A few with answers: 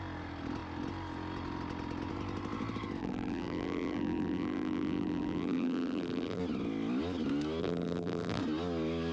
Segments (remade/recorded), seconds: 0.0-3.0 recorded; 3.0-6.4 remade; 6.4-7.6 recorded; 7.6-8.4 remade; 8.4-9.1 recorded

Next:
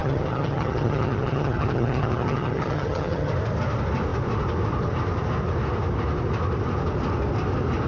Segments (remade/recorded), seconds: 0.0-3.3 remade; 3.3-7.9 recorded